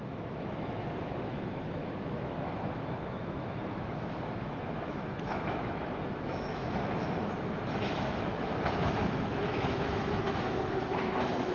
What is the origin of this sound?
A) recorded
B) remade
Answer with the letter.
B